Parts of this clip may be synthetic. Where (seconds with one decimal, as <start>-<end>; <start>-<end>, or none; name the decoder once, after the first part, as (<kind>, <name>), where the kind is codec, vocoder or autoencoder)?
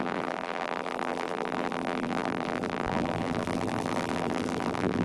0.0-5.0 (vocoder, BigVGAN v2)